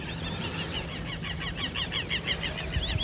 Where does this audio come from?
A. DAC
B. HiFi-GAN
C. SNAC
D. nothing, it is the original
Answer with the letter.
D